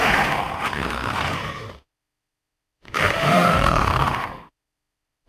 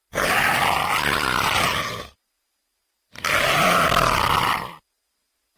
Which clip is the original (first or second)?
second